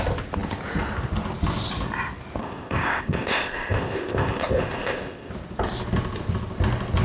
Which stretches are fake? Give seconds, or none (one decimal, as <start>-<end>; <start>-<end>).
2.4-5.3